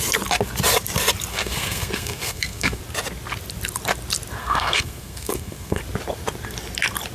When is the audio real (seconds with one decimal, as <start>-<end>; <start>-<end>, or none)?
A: 0.0-1.3; 2.8-4.4; 5.8-7.1